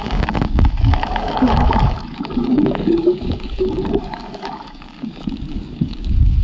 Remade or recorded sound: remade